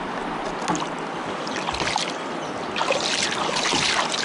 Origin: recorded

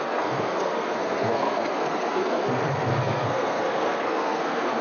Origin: remade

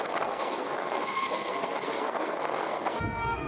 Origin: remade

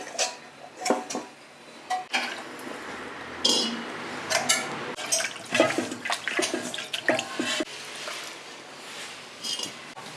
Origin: recorded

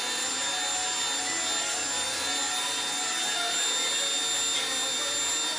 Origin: recorded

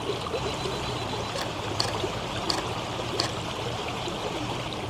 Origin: recorded